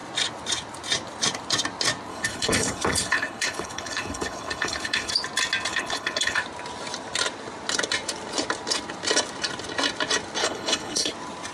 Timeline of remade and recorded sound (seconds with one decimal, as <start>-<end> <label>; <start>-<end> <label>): 0.0-2.1 recorded; 2.1-5.1 remade; 5.1-5.7 recorded; 5.7-6.4 remade; 6.4-10.4 recorded; 10.4-11.1 remade; 11.1-11.5 recorded

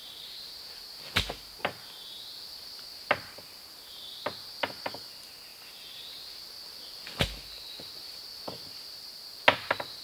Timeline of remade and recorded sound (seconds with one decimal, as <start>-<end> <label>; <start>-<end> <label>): 0.0-1.0 remade; 1.0-10.0 recorded

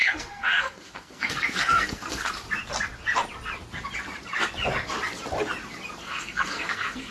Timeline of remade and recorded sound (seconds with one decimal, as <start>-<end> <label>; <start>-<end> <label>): 0.0-2.3 remade; 2.3-6.0 recorded; 6.0-7.1 remade

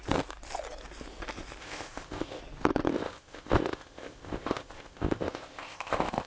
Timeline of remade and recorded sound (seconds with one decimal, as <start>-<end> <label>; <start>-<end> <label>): 0.0-1.6 recorded; 1.6-2.4 remade; 2.4-2.9 recorded; 2.9-6.3 remade

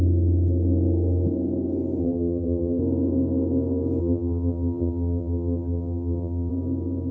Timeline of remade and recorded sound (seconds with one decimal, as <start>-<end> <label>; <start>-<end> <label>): 0.0-2.0 recorded; 2.0-2.8 remade; 2.8-4.0 recorded; 4.0-6.5 remade; 6.5-7.1 recorded

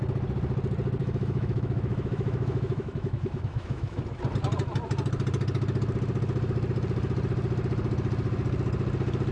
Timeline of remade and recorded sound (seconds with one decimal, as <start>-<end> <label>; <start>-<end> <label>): 0.0-1.0 recorded; 1.0-4.0 remade; 4.0-9.3 recorded